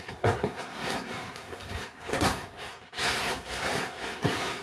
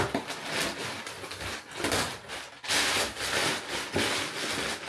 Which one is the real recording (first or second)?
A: second